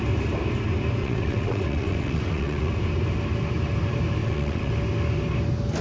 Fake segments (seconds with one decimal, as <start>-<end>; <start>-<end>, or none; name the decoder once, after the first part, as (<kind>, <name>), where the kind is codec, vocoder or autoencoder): 1.0-2.7 (vocoder, WaveNeXt); 4.2-4.7